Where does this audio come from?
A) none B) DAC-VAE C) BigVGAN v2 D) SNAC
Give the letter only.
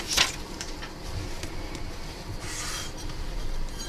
A